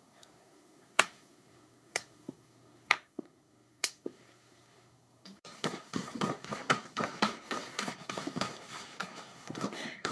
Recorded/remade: remade